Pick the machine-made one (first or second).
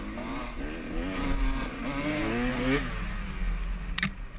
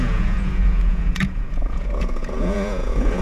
second